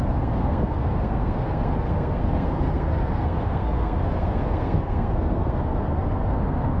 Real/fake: fake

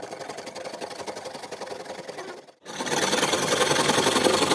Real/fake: real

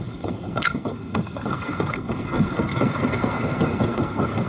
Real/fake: fake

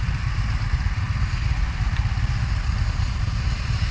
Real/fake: real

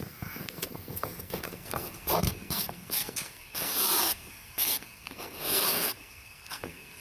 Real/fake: fake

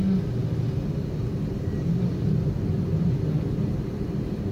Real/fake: real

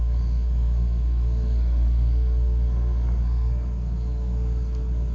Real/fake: fake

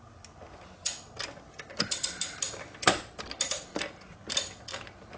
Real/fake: real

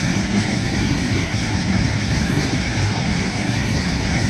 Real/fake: fake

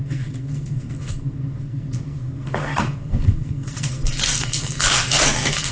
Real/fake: fake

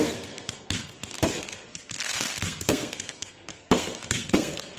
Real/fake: fake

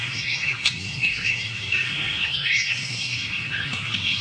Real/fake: fake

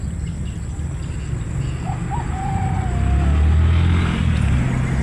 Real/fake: real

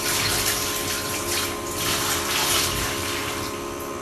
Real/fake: real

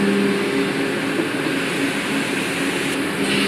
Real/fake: real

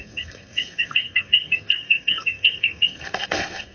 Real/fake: fake